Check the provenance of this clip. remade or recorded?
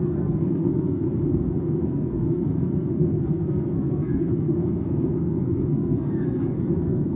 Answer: remade